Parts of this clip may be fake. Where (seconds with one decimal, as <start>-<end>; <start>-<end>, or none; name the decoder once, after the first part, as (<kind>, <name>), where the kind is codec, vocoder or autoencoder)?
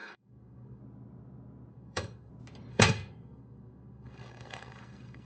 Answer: 0.0-0.8 (codec, SNAC); 1.7-2.3; 2.7-5.3